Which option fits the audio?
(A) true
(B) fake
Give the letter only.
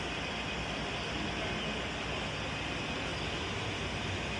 A